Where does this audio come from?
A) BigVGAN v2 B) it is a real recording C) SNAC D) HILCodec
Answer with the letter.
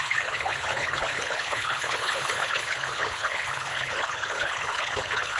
D